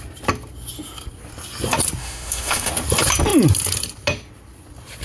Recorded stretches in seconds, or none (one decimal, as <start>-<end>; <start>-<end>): 0.0-2.0; 2.7-5.0